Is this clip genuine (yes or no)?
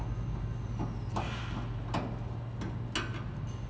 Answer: yes